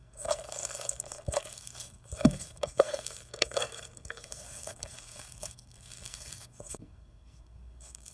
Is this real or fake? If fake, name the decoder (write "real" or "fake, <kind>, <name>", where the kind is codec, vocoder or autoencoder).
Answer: fake, codec, SNAC